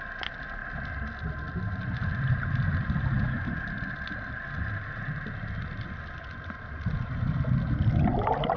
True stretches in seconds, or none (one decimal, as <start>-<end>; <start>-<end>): 0.0-8.6